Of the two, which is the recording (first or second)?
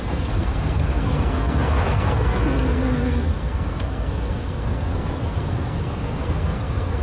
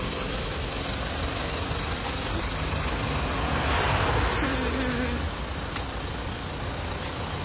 second